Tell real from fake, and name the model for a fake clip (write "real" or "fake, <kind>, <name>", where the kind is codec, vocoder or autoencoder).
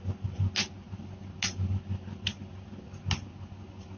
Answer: real